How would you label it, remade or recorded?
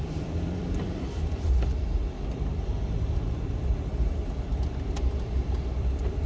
remade